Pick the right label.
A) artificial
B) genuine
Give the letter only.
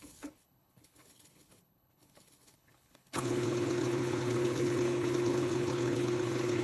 A